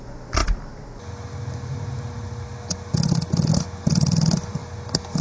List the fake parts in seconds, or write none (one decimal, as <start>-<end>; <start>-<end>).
none

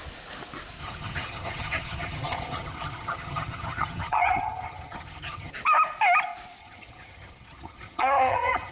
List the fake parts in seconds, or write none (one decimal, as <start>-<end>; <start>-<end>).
0.8-5.5; 6.6-8.7

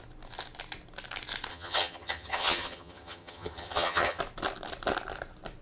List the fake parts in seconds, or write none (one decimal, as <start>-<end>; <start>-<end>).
1.5-4.2